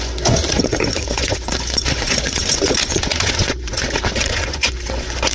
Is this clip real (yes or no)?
no